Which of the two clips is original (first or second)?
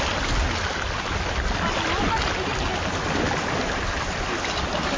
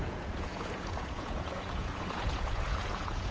first